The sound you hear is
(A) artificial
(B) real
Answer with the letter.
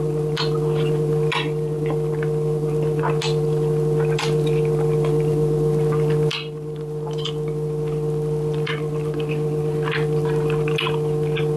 B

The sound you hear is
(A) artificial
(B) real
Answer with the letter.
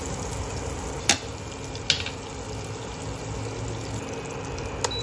B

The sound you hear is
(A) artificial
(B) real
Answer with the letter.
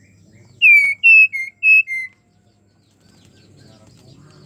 B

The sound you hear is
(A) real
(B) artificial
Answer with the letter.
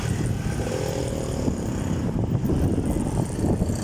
A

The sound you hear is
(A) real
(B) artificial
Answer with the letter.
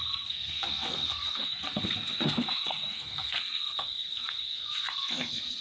B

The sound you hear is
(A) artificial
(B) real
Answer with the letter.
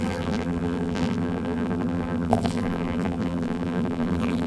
A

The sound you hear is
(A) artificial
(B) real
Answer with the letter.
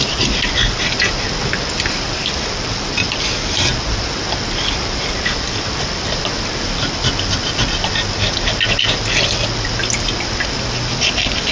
B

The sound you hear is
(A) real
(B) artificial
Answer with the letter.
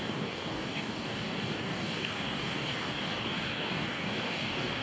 B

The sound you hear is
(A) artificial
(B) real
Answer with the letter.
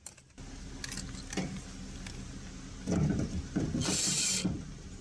B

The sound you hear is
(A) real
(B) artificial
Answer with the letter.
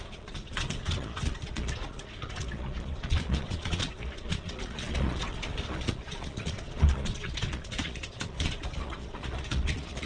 B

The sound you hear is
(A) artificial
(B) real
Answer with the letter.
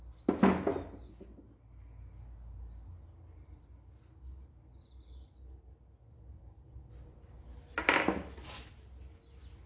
B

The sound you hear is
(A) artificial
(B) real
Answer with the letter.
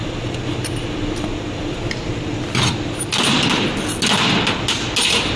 B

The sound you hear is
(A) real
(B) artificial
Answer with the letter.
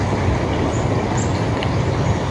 A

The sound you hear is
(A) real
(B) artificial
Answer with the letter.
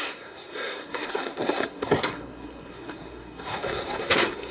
B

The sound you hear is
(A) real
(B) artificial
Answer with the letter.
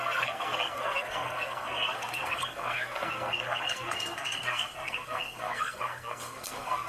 B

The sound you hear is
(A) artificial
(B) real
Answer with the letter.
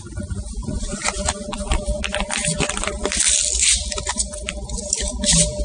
A